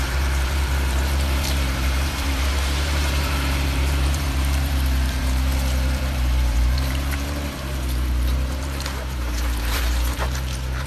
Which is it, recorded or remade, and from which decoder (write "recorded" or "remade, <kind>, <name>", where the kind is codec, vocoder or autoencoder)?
remade, vocoder, BigVGAN v2